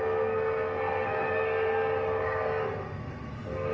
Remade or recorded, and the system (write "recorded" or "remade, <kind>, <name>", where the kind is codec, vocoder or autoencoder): remade, codec, SNAC